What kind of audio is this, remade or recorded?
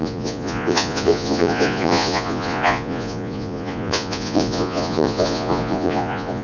remade